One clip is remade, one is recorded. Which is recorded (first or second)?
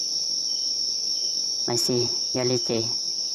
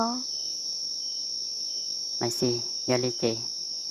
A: second